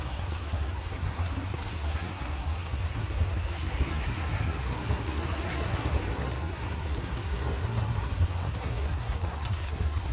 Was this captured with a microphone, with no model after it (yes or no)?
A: no